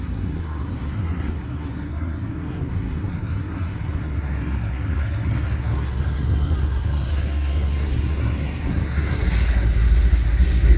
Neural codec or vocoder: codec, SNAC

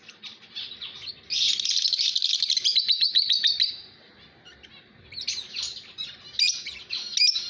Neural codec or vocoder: none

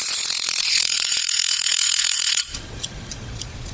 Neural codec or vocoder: vocoder, Vocos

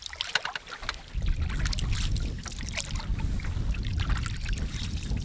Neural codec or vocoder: none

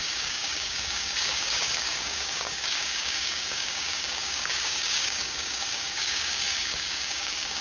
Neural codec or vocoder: codec, DAC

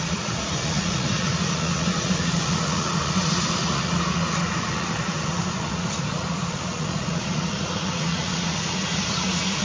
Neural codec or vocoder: vocoder, Vocos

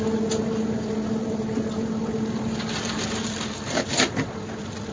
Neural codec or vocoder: none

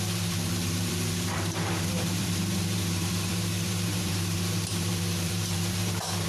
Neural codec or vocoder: vocoder, BigVGAN v2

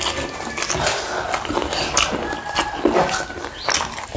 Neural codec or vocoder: none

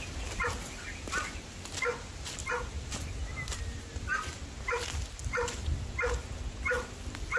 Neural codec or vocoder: none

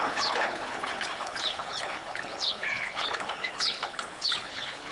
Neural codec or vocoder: codec, HILCodec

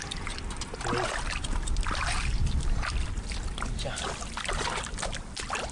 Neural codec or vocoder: none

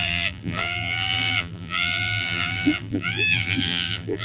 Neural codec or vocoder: vocoder, BigVGAN v2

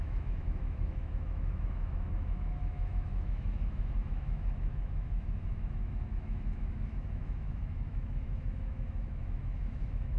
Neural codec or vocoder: autoencoder, DAC-VAE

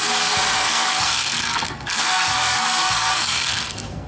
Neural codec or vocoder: codec, SNAC